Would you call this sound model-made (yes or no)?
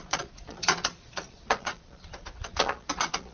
yes